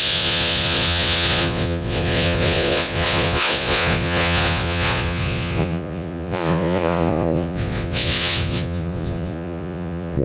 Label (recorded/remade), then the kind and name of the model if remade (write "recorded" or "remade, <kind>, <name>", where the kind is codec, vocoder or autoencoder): remade, vocoder, Vocos